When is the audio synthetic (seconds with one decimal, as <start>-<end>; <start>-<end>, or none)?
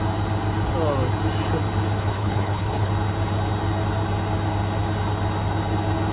2.0-2.9